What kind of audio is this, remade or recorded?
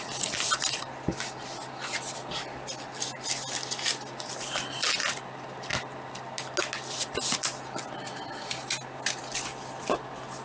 recorded